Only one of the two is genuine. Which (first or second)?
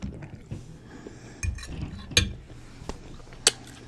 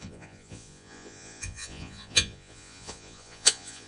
first